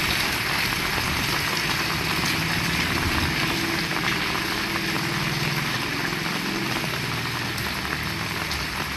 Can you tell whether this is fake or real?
real